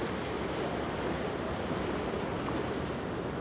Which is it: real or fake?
real